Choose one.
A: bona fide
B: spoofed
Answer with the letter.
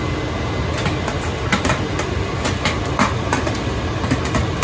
A